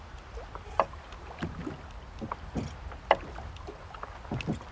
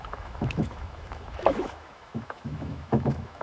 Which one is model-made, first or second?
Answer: second